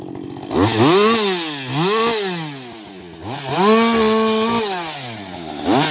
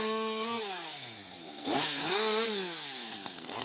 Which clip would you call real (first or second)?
first